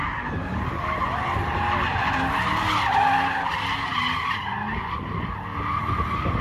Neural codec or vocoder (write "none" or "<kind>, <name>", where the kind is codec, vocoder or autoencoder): none